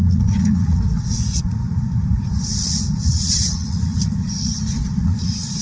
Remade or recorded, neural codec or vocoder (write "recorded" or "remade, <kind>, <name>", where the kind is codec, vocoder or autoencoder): remade, vocoder, Vocos